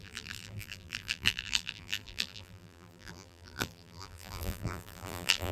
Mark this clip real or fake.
fake